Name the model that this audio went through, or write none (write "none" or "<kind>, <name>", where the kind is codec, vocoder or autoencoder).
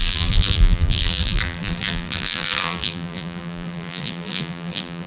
vocoder, BigVGAN v2